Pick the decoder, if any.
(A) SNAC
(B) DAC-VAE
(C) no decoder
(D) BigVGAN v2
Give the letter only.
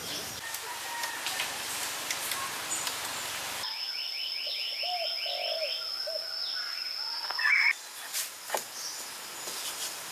C